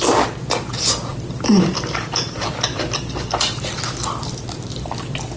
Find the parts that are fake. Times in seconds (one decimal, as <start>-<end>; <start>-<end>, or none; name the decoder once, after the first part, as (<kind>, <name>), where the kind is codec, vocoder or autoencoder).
1.1-3.7 (vocoder, BigVGAN v2)